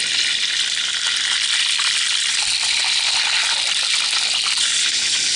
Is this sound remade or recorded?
recorded